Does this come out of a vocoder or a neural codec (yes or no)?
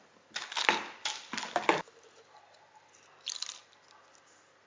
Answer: no